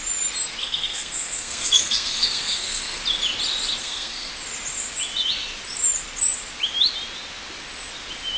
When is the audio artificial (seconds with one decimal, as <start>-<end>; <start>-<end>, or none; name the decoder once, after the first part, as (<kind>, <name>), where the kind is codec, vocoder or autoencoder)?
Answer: 0.6-3.0 (codec, SNAC); 3.8-4.3